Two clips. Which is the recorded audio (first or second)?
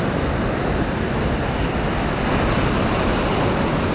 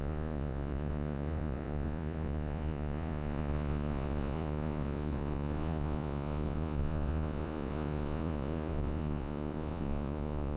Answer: first